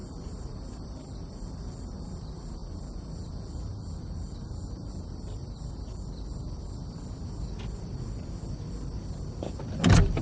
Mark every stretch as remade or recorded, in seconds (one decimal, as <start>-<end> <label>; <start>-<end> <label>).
0.0-10.2 recorded